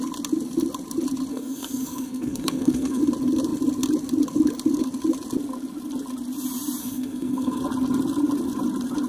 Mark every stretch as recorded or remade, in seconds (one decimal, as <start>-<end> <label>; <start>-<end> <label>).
0.0-1.3 recorded; 1.3-3.0 remade; 3.0-6.8 recorded; 6.8-7.6 remade; 7.6-9.1 recorded